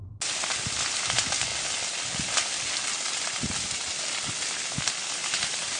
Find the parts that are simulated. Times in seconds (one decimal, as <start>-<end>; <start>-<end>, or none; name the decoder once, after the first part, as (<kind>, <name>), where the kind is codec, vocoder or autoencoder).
none